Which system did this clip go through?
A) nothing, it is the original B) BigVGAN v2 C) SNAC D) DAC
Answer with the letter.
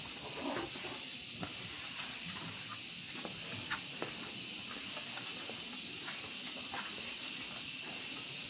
A